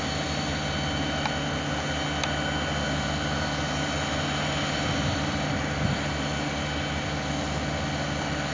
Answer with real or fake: real